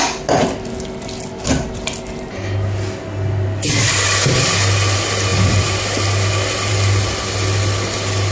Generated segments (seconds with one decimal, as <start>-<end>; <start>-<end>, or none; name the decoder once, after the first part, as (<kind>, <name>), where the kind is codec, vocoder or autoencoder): none